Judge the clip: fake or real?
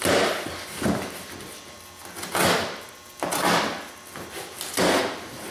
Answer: real